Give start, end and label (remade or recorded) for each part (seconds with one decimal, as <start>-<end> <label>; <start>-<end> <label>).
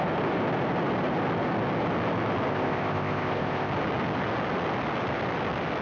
0.0-2.5 recorded; 2.5-3.7 remade; 3.7-5.8 recorded